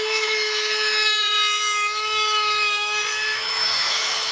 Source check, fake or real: fake